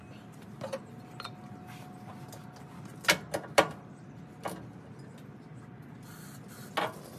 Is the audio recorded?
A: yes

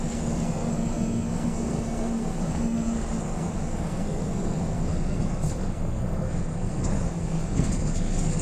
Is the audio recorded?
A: no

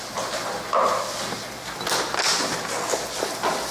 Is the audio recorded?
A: yes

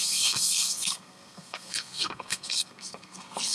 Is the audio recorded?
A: no